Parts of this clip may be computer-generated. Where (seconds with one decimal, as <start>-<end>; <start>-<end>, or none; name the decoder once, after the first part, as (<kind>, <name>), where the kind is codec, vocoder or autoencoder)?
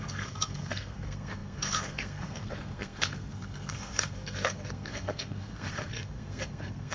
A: 0.0-6.9 (codec, SNAC)